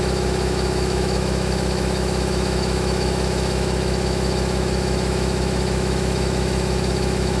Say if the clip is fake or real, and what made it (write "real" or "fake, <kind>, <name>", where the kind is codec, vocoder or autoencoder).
fake, autoencoder, DAC-VAE